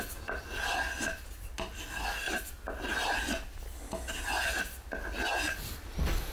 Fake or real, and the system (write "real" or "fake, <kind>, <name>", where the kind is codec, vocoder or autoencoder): real